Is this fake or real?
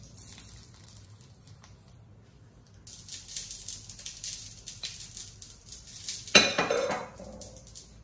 real